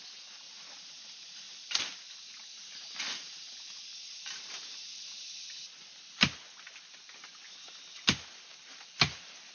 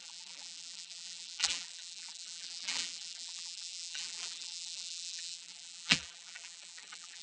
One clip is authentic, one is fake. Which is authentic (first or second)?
first